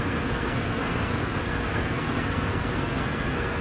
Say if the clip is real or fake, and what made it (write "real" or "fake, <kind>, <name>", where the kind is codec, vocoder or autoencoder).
fake, codec, SNAC